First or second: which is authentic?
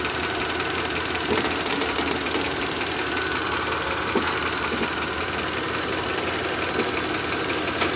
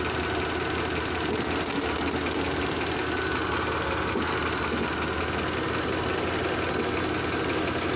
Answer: second